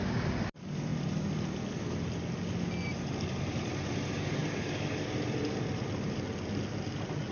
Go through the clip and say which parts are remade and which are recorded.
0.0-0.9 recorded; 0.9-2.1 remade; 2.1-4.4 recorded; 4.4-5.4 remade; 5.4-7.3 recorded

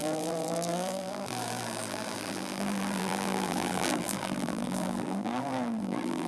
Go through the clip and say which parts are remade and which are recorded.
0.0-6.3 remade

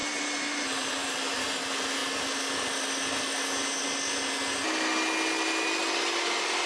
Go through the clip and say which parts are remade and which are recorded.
0.0-1.5 remade; 1.5-6.7 recorded

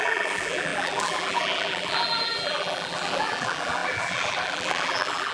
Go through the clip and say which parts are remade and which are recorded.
0.0-5.3 remade